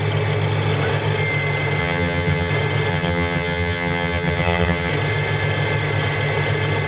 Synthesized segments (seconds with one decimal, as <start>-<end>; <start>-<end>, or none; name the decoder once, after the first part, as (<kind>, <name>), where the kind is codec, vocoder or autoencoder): 1.8-2.5 (vocoder, HiFi-GAN); 2.9-4.9